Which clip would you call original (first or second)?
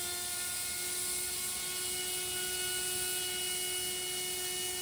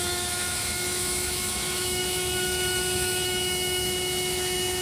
first